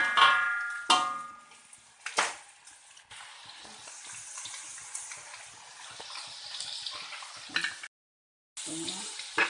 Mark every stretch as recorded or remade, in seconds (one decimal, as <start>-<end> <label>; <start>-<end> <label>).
0.0-9.5 recorded